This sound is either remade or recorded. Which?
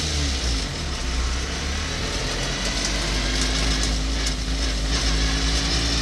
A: recorded